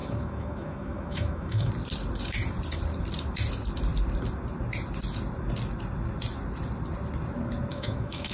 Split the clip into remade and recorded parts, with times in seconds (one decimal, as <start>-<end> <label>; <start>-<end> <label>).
0.0-1.7 remade; 1.7-7.7 recorded; 7.7-8.3 remade